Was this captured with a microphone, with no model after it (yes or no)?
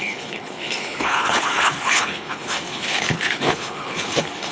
no